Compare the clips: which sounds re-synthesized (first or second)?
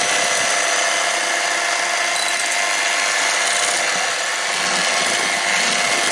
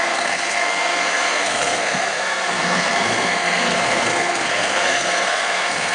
second